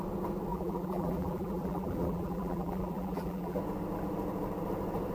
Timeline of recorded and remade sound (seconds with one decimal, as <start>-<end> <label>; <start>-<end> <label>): 0.0-0.5 recorded; 0.5-3.6 remade; 3.6-5.1 recorded